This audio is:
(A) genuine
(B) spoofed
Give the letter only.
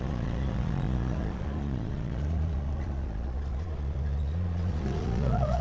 B